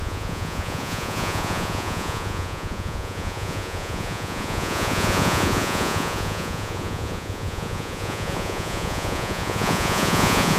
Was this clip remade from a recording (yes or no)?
yes